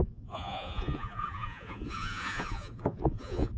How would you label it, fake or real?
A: fake